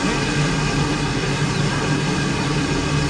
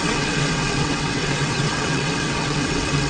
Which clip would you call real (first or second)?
first